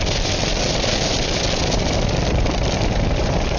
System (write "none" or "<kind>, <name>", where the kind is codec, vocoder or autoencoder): none